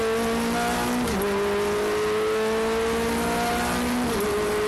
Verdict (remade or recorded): recorded